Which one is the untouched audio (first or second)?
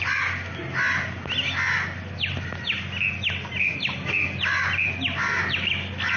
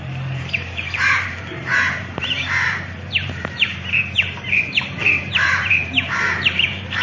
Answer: first